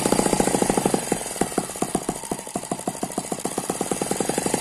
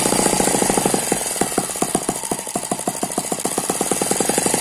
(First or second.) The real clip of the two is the second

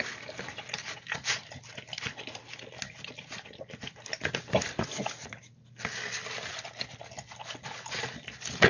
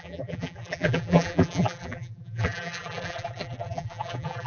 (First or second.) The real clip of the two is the first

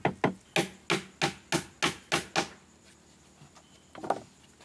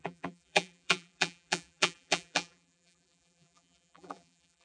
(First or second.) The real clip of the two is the first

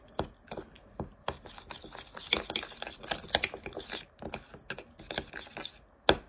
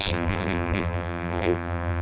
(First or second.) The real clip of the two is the first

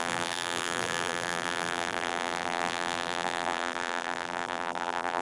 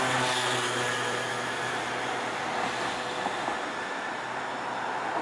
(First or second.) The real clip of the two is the second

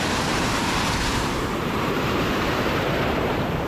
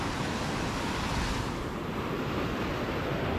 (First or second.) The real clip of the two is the second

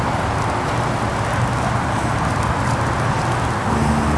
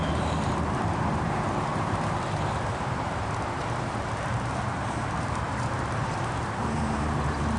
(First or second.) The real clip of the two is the first